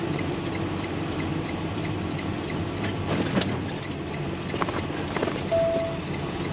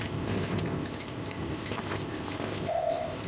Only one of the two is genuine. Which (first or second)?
first